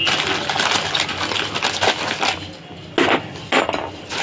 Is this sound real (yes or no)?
yes